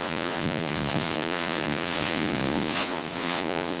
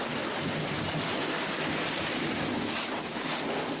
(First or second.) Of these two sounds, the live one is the second